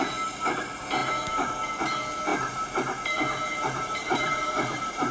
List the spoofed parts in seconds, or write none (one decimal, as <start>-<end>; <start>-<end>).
1.0-1.5; 2.3-5.1